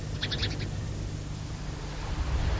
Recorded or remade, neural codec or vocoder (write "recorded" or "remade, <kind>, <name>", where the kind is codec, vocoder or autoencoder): recorded